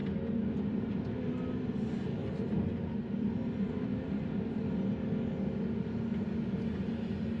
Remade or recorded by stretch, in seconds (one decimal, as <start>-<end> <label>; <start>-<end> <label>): 0.0-1.0 remade; 1.0-2.2 recorded; 2.2-4.6 remade; 4.6-7.4 recorded